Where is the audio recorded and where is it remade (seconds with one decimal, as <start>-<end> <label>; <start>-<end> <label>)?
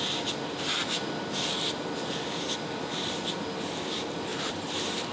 0.0-4.3 recorded; 4.3-5.1 remade